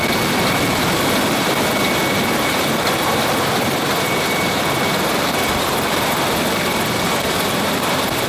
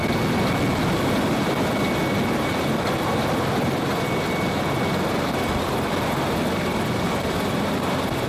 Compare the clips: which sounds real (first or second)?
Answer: second